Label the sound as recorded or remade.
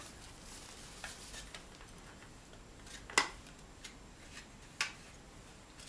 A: recorded